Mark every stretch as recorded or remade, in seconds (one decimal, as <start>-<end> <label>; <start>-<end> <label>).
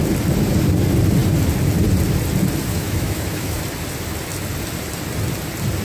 0.0-2.7 recorded; 2.7-3.6 remade; 3.6-5.8 recorded